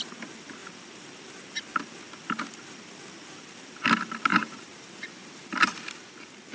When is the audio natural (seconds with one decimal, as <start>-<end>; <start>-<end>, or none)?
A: 0.0-4.3